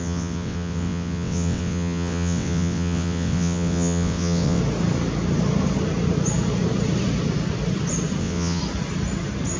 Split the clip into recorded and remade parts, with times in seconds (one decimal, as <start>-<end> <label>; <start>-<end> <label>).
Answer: 0.0-4.6 remade; 4.6-8.2 recorded; 8.2-8.6 remade; 8.6-9.6 recorded